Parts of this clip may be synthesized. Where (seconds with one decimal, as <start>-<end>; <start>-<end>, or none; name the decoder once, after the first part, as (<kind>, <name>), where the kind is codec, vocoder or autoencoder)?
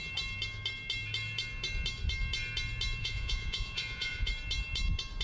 3.0-4.3 (vocoder, Vocos)